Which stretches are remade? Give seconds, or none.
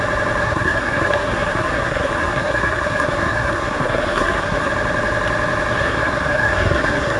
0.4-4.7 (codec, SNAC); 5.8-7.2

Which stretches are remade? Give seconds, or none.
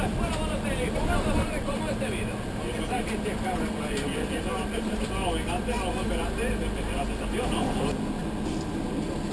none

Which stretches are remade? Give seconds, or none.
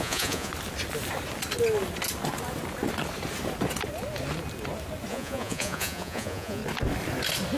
0.0-0.5 (vocoder, Vocos); 5.1-6.6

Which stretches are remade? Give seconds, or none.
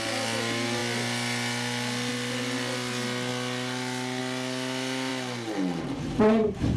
none